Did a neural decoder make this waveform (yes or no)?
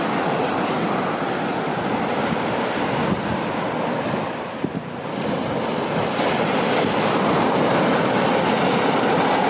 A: no